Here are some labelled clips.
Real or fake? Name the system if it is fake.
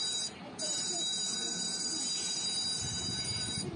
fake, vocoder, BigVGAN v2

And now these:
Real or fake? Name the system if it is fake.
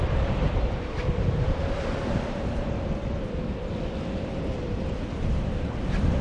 fake, vocoder, BigVGAN v2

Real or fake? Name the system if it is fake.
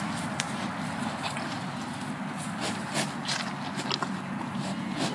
real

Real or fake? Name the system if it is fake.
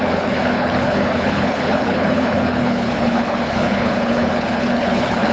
fake, codec, HILCodec